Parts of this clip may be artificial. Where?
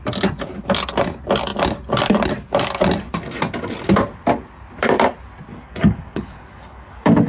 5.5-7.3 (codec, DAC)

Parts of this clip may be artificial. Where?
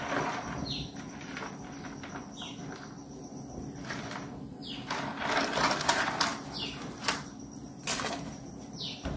none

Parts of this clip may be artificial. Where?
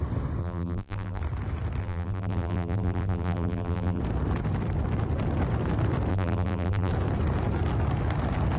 0.4-1.2 (vocoder, BigVGAN v2); 1.8-4.0; 6.1-6.9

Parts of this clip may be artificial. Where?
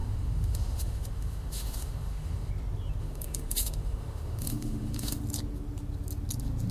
0.0-2.5 (autoencoder, DAC-VAE); 3.0-5.2